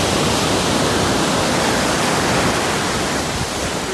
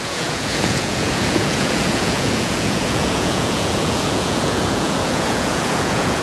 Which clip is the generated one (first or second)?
second